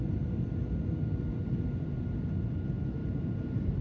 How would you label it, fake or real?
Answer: real